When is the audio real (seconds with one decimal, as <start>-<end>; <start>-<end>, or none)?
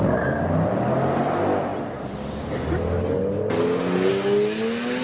0.0-5.0